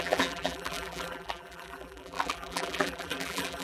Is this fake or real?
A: fake